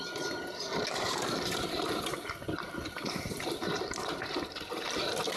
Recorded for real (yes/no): yes